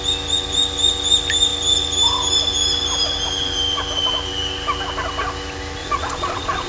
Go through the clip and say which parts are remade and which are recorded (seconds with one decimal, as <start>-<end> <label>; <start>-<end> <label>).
0.0-5.8 recorded; 5.8-6.7 remade